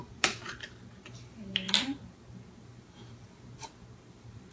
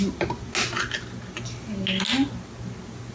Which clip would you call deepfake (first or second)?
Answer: first